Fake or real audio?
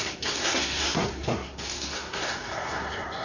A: fake